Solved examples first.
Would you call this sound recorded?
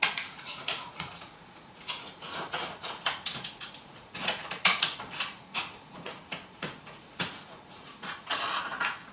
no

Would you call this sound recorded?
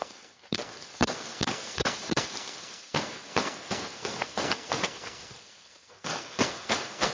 no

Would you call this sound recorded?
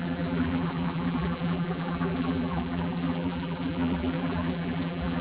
no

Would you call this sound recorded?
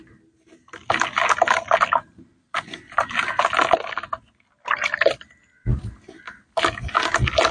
yes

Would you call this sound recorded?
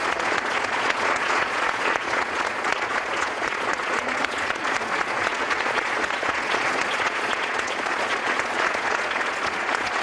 no